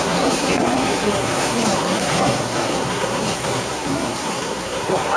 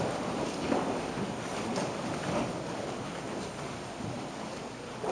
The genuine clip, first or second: second